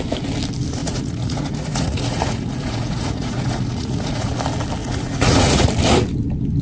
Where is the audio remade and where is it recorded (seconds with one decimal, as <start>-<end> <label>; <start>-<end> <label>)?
0.0-0.8 recorded; 0.8-4.3 remade; 4.3-4.8 recorded; 4.8-5.7 remade; 5.7-6.6 recorded